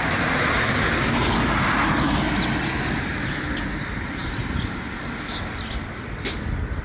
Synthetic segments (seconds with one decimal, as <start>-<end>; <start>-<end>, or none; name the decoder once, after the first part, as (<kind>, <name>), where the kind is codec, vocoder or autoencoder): none